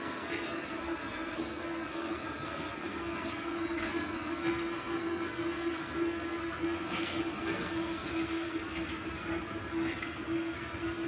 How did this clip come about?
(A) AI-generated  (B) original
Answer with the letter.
A